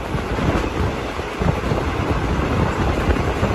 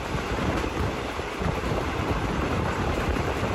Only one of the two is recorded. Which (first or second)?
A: first